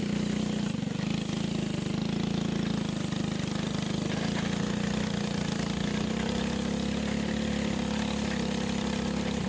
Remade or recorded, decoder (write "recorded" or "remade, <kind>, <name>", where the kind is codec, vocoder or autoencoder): recorded